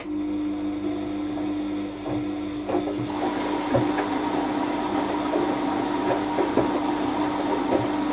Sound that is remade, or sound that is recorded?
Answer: recorded